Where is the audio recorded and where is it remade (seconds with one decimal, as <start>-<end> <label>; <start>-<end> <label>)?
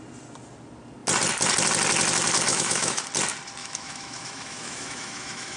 0.0-2.5 recorded; 2.5-3.0 remade; 3.0-3.6 recorded; 3.6-5.6 remade